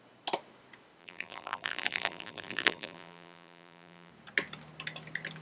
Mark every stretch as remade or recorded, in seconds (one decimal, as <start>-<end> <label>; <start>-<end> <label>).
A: 0.0-1.0 recorded; 1.0-4.1 remade; 4.1-5.4 recorded